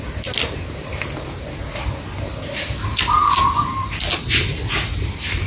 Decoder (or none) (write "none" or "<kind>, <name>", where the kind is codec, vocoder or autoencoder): none